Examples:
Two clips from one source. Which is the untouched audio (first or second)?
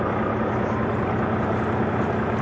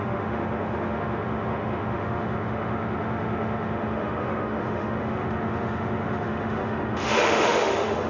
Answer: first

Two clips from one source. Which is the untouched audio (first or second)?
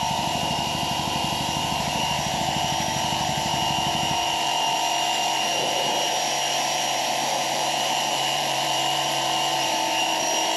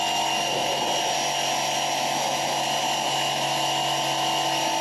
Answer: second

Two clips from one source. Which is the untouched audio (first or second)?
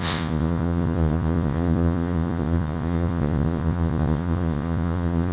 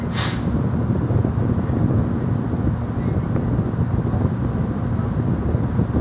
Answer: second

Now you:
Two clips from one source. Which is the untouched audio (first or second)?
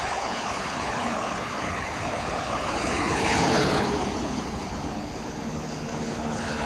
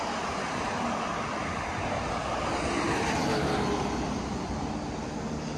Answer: second